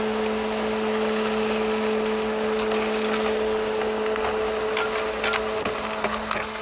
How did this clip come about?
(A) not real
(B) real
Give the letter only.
B